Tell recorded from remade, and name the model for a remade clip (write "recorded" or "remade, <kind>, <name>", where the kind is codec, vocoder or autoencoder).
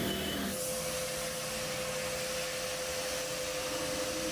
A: recorded